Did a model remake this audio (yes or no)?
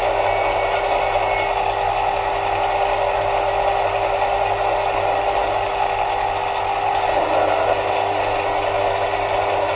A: no